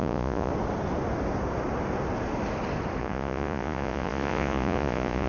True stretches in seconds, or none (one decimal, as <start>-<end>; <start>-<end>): 0.5-3.0